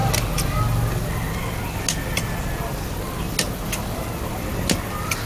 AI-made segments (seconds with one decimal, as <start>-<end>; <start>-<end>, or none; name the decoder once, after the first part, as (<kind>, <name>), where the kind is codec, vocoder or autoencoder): none